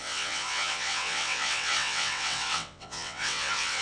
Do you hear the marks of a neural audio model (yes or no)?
yes